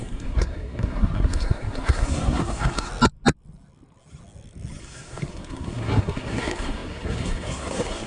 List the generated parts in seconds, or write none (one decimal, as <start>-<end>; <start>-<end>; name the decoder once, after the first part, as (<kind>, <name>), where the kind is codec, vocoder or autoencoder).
0.0-2.9 (codec, SNAC); 4.8-8.1